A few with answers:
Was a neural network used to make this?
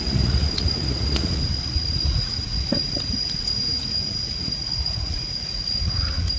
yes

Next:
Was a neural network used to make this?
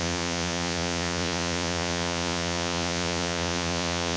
yes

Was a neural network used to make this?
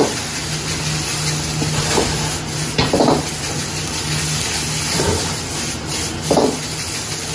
no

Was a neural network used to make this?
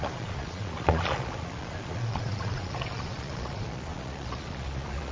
yes